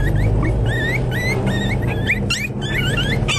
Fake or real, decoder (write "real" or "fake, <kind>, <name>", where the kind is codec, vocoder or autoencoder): real